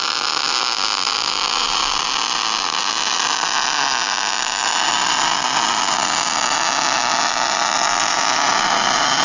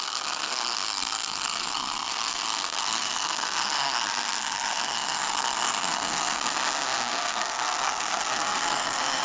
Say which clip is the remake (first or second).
second